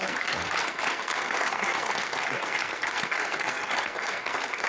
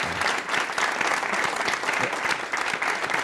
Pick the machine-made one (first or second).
first